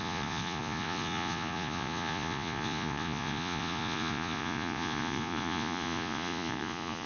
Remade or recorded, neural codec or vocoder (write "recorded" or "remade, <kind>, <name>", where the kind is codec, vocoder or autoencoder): remade, vocoder, Vocos